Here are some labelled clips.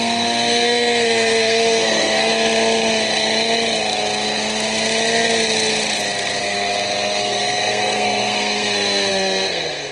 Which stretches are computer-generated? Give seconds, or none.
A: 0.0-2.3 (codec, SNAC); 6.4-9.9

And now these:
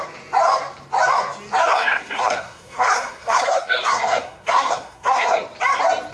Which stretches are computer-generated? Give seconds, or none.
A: 1.7-5.4 (codec, SNAC)

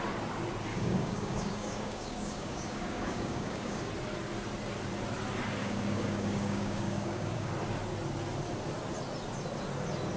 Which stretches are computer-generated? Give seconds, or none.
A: 0.7-3.9 (codec, DAC); 5.6-7.5

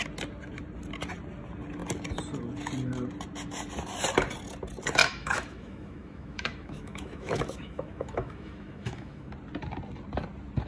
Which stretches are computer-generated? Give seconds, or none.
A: 5.0-9.3 (autoencoder, DAC-VAE)

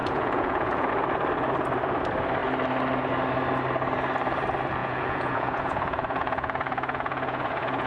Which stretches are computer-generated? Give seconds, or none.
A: 0.0-0.9 (vocoder, Vocos); 4.8-7.9

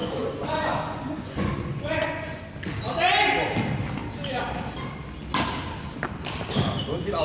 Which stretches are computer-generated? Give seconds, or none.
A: 0.0-2.4 (vocoder, Vocos)